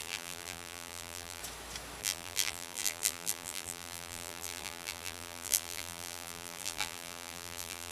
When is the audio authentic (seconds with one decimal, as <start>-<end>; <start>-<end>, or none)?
1.4-2.0